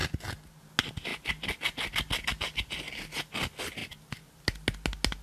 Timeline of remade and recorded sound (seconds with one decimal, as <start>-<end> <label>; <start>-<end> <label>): 0.0-5.2 recorded